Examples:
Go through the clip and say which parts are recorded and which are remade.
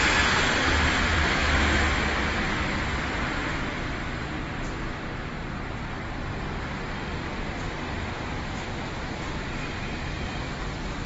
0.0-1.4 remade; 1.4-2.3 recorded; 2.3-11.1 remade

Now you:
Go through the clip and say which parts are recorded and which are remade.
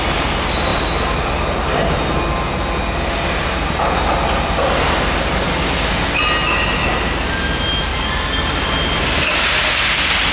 0.0-10.3 recorded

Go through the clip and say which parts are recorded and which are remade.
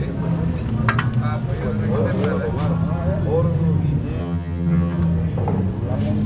0.0-4.2 recorded; 4.2-5.0 remade; 5.0-6.3 recorded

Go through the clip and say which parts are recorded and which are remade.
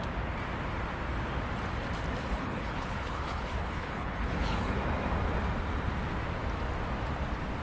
0.0-2.2 recorded; 2.2-4.8 remade; 4.8-7.6 recorded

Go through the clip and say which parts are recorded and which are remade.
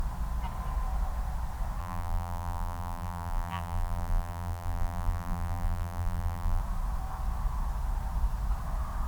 0.0-1.8 recorded; 1.8-6.6 remade; 6.6-9.1 recorded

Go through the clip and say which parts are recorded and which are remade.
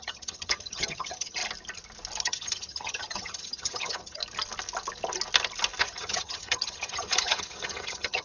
0.0-1.4 remade; 1.4-2.2 recorded; 2.2-4.2 remade; 4.2-5.8 recorded; 5.8-8.2 remade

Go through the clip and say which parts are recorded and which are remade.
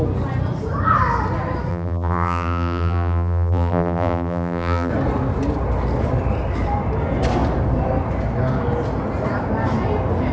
0.0-1.7 recorded; 1.7-4.9 remade; 4.9-10.3 recorded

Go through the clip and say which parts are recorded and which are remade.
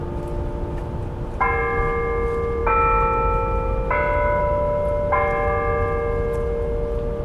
0.0-7.2 recorded